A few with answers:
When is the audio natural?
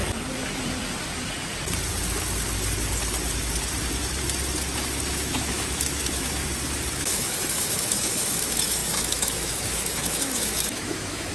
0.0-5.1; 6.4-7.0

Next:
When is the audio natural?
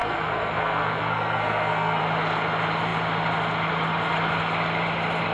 2.0-5.3